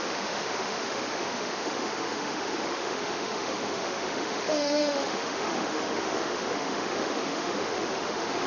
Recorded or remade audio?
remade